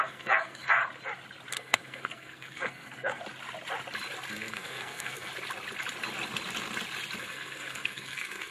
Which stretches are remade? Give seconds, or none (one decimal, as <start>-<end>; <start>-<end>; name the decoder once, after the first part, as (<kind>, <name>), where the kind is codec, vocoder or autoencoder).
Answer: 0.0-0.8 (codec, SNAC); 1.5-3.2; 4.3-5.3; 7.2-8.5